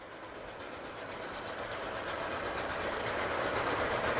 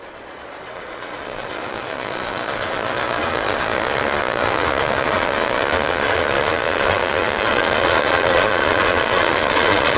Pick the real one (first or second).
first